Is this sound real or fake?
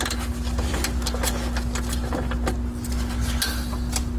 real